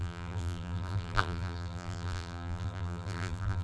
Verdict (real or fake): fake